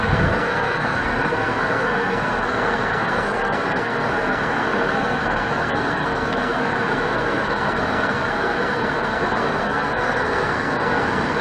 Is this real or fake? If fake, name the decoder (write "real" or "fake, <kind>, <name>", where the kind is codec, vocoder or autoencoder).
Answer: fake, codec, SNAC